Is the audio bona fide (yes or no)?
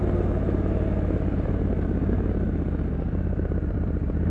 yes